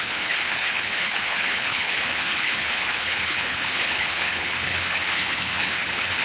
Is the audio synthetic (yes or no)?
yes